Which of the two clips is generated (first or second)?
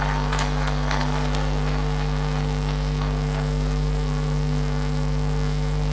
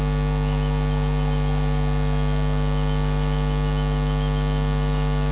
first